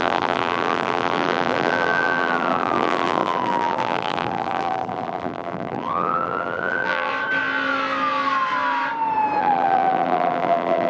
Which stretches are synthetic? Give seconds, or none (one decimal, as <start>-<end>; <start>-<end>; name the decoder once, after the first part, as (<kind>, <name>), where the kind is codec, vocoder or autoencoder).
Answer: 0.0-7.1 (vocoder, BigVGAN v2); 9.4-10.9